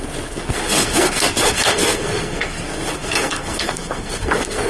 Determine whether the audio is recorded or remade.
remade